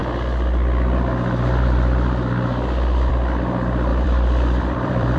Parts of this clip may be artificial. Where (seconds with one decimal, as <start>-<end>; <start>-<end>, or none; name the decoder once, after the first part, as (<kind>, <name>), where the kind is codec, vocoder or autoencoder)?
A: 3.9-5.2 (vocoder, BigVGAN v2)